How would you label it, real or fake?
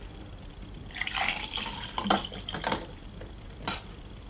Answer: fake